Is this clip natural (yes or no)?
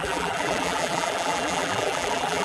no